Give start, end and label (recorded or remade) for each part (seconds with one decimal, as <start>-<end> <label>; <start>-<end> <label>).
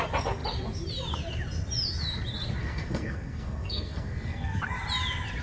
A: 0.0-2.6 recorded; 2.6-4.6 remade; 4.6-5.4 recorded